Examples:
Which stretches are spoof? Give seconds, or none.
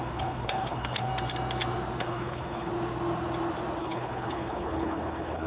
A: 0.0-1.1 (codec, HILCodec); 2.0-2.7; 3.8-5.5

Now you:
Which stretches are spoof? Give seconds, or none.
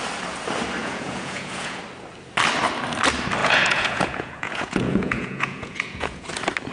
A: 0.8-1.8 (vocoder, Vocos); 3.4-6.3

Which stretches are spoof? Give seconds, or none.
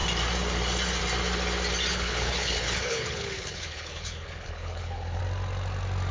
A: 1.9-5.2 (codec, HILCodec)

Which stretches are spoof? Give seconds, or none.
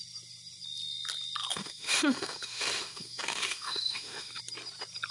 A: 1.5-4.4 (autoencoder, DAC-VAE)